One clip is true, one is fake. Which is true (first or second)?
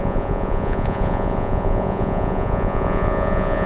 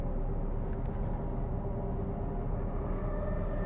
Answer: second